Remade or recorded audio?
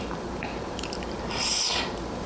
remade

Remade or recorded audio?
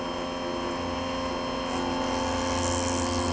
recorded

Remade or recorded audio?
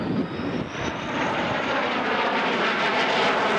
remade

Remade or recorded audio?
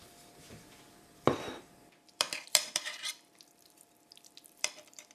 remade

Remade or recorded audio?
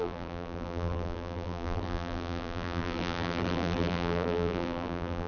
remade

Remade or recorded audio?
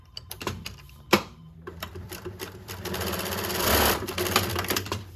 remade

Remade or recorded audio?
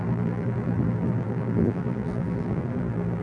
remade